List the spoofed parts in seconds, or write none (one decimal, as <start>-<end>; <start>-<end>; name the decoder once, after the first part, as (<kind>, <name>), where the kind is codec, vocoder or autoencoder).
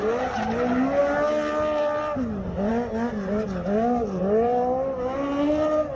none